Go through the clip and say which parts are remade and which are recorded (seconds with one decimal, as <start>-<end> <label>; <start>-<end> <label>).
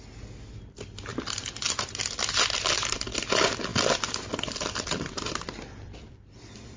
0.0-1.1 recorded; 1.1-1.9 remade; 1.9-3.7 recorded; 3.7-6.8 remade